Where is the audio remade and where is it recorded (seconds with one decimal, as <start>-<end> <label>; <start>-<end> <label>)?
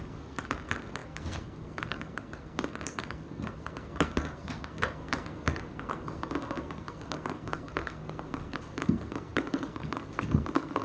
0.0-10.8 remade